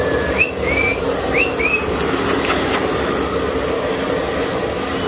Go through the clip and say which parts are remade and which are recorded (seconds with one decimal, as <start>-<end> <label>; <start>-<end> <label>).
0.0-5.1 recorded